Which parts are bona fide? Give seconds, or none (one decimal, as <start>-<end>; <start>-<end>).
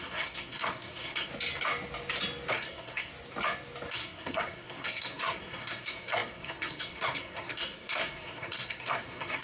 1.3-2.5; 3.1-3.9